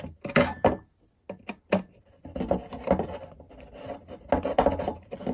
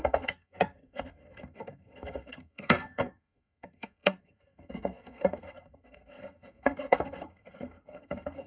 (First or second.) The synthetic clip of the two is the second